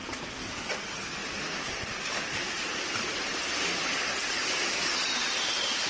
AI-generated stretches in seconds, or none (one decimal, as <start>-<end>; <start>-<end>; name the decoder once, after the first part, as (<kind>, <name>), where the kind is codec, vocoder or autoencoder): none